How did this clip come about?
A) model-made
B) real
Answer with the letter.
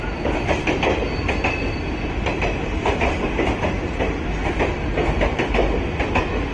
B